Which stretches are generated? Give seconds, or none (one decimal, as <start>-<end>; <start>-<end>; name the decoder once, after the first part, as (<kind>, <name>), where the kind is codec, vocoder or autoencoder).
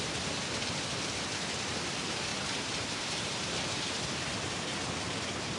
2.3-3.8 (vocoder, BigVGAN v2)